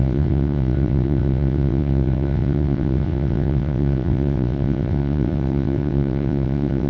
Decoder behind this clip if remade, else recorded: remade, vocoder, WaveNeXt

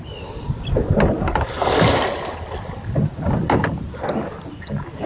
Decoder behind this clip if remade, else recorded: recorded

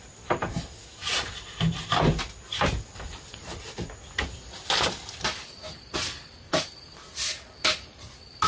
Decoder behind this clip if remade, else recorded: recorded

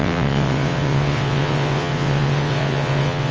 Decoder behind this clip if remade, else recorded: remade, vocoder, WaveNeXt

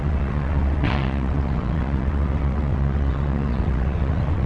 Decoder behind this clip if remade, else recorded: remade, vocoder, WaveNeXt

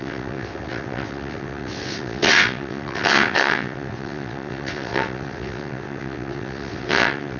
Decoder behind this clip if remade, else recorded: remade, vocoder, WaveNeXt